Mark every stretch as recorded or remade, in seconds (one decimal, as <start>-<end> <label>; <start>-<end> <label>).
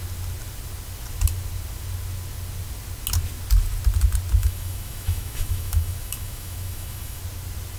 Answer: 0.0-4.4 recorded; 4.4-7.2 remade; 7.2-7.8 recorded